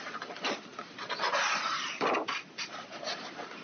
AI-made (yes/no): no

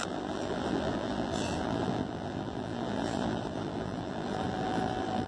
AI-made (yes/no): yes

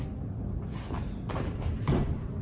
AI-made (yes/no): yes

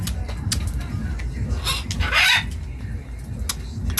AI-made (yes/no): no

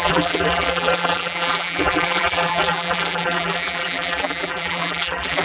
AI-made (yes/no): yes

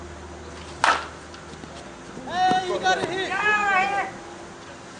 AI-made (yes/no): no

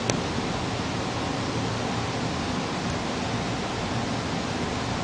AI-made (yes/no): no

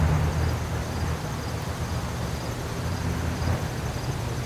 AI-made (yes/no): no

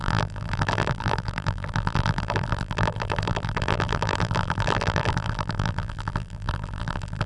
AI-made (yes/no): yes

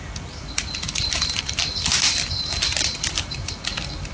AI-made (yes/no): yes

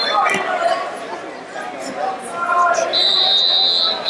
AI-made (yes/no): no